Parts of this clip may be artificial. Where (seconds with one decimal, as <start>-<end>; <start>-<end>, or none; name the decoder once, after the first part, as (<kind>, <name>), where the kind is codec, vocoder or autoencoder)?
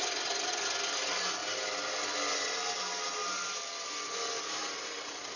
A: none